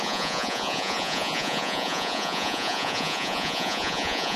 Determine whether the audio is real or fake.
fake